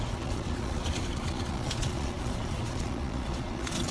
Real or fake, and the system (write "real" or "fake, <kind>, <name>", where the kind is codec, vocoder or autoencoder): fake, vocoder, Vocos